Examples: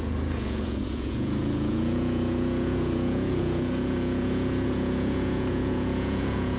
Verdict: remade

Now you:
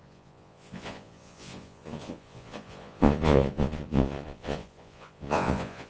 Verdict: remade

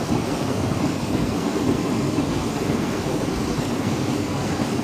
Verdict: remade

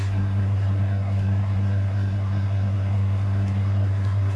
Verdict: remade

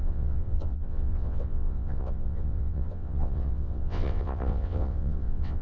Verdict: remade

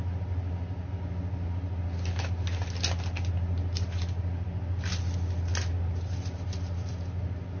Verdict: recorded